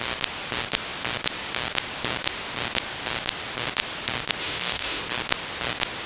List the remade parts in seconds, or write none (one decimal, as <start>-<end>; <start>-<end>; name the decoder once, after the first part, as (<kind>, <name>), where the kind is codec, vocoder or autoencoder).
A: 4.4-5.0 (autoencoder, DAC-VAE)